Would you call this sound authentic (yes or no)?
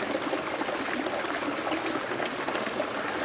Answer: yes